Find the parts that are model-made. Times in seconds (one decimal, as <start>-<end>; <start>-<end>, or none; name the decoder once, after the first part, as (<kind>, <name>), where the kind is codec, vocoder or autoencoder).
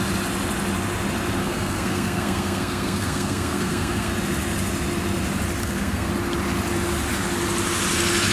1.4-4.1 (codec, SNAC); 5.6-6.1